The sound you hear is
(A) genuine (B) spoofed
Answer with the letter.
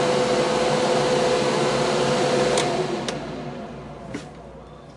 A